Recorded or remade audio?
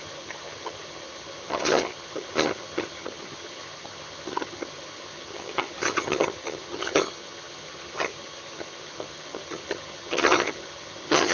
remade